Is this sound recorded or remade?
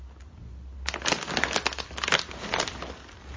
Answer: recorded